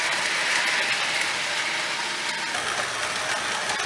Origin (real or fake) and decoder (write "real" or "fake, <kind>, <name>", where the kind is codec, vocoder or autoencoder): real